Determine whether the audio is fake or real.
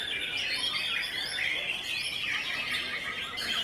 real